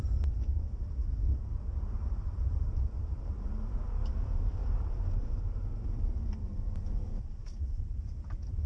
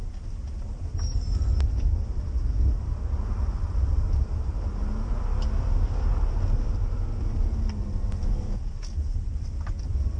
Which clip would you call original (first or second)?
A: second